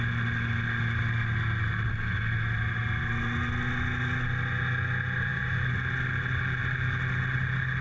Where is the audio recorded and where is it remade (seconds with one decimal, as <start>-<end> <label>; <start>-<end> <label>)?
0.0-7.8 recorded